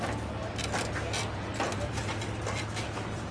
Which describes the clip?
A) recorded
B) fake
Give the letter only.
B